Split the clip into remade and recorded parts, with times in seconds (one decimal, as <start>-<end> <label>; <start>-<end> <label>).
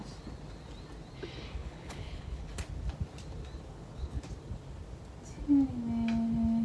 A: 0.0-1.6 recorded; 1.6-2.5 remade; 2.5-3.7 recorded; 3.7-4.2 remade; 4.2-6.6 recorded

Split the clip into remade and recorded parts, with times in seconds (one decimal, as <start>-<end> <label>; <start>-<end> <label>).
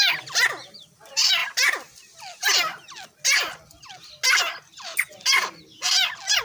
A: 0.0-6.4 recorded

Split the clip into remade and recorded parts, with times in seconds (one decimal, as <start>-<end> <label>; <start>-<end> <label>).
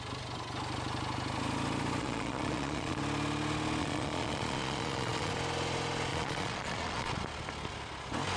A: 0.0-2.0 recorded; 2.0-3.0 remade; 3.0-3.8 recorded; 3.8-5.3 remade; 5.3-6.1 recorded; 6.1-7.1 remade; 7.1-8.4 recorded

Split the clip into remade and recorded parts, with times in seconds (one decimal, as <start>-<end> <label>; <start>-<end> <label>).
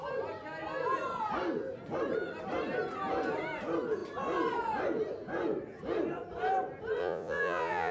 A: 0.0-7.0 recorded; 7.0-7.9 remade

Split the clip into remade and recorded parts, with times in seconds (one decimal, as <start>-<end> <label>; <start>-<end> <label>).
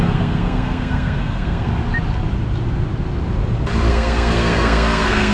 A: 0.0-1.7 remade; 1.7-3.9 recorded; 3.9-5.3 remade